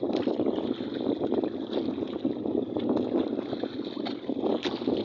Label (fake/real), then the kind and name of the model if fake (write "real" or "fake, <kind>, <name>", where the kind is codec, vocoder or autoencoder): real